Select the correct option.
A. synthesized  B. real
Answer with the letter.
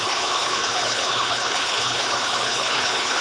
A